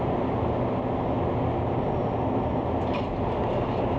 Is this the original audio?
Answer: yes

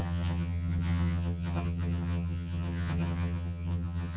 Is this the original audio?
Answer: no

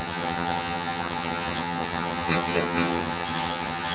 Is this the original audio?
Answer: no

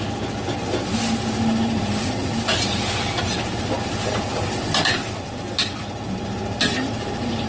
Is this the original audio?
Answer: yes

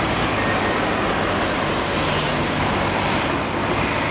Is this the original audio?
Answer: yes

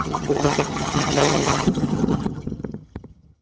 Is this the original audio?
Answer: no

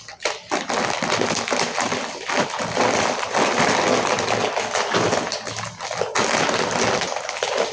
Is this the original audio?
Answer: yes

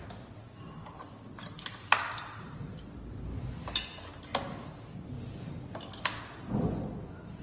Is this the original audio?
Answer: yes